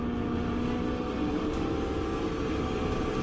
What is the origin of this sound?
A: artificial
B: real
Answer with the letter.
B